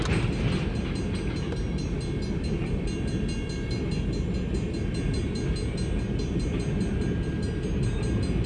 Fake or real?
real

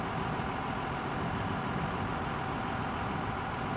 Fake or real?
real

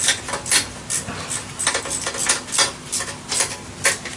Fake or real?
real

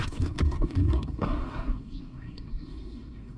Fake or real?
fake